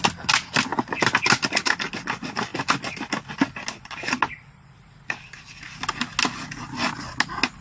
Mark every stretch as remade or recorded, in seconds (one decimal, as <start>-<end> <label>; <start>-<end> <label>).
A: 0.0-7.6 recorded

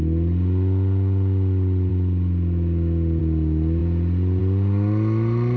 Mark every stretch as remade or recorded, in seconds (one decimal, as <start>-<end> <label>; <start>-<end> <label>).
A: 0.0-5.6 recorded

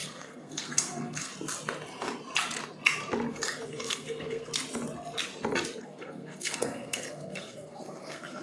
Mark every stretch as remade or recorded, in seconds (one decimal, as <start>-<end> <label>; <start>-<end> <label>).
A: 0.0-1.3 remade; 1.3-3.3 recorded; 3.3-4.5 remade; 4.5-5.8 recorded; 5.8-8.4 remade

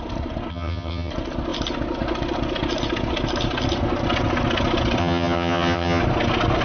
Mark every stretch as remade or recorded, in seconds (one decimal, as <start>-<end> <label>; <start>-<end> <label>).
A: 0.0-0.5 recorded; 0.5-1.1 remade; 1.1-5.0 recorded; 5.0-6.0 remade; 6.0-6.6 recorded

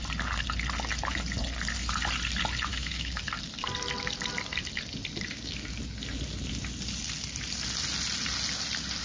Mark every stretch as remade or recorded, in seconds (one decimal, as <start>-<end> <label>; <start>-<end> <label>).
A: 0.0-2.7 recorded; 2.7-3.2 remade; 3.2-9.0 recorded

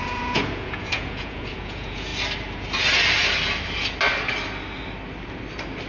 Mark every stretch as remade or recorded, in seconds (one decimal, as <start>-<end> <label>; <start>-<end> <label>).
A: 0.0-2.1 remade; 2.1-5.9 recorded